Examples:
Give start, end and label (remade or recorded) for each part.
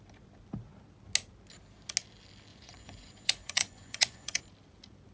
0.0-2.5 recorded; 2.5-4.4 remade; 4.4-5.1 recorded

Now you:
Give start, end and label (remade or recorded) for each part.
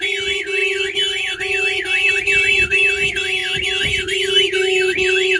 0.0-5.4 remade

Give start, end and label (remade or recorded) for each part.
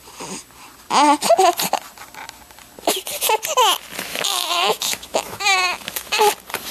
0.0-4.1 recorded; 4.1-6.2 remade; 6.2-6.7 recorded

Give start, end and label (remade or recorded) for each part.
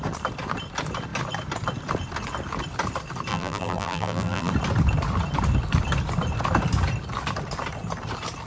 0.0-3.3 recorded; 3.3-4.5 remade; 4.5-8.5 recorded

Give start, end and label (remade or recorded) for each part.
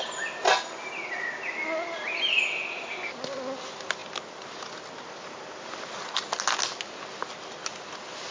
0.0-8.3 recorded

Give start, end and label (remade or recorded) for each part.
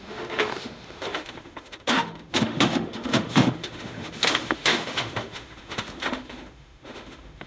0.0-7.5 remade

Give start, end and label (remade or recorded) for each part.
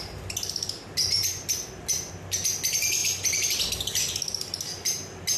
0.0-5.4 recorded